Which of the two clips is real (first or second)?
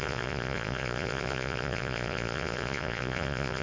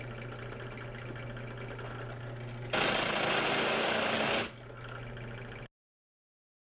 second